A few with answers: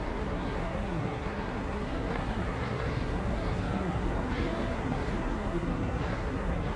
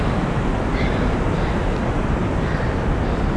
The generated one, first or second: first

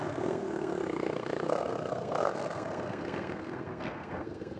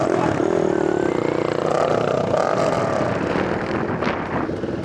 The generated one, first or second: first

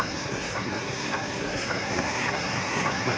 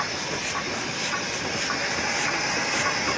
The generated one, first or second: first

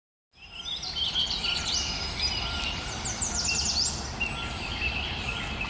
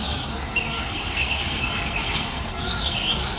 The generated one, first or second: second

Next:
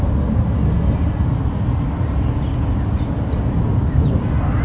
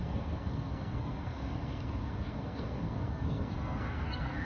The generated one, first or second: second